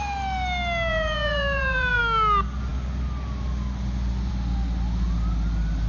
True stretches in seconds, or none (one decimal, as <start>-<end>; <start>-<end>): 0.0-0.9; 2.0-5.9